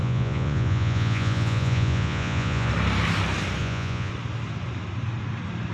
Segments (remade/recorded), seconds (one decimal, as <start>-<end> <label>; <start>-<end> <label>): 0.0-2.7 remade; 2.7-3.6 recorded; 3.6-4.1 remade; 4.1-5.7 recorded